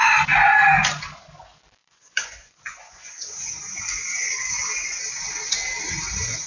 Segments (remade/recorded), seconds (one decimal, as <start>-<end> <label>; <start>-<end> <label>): 0.0-1.8 recorded; 1.8-3.8 remade; 3.8-6.5 recorded